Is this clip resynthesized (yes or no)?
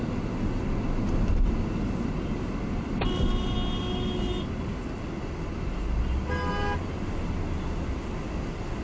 no